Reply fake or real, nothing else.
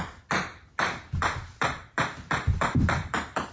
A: real